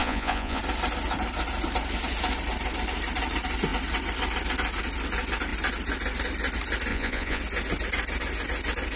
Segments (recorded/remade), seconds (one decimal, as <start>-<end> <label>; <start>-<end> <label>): 0.0-0.6 remade; 0.6-6.9 recorded; 6.9-7.4 remade; 7.4-9.0 recorded